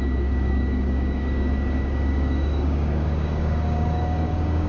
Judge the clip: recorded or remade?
remade